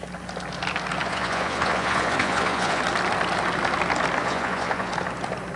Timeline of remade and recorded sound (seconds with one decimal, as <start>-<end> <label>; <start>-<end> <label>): 0.0-1.0 recorded; 1.0-2.8 remade; 2.8-4.2 recorded; 4.2-4.9 remade; 4.9-5.6 recorded